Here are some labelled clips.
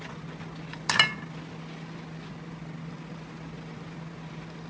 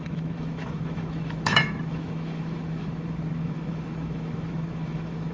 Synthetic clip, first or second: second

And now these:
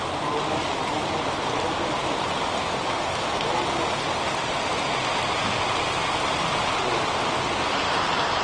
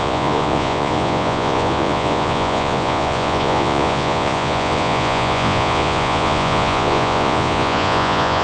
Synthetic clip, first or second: second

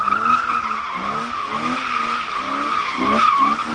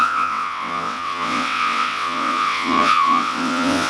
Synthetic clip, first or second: second